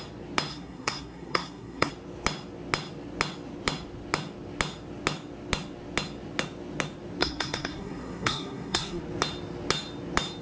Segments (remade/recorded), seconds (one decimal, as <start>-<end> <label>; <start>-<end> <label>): 0.0-0.5 recorded; 0.5-1.9 remade; 1.9-7.2 recorded; 7.2-9.0 remade; 9.0-10.4 recorded